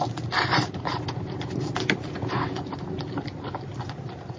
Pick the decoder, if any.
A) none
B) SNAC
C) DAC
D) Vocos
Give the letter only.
A